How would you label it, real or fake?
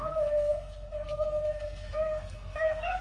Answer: fake